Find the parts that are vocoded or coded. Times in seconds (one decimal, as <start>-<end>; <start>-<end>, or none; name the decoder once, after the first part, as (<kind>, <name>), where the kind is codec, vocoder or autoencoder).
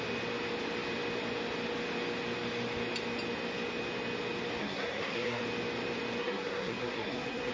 4.6-5.4 (codec, SNAC); 6.2-7.5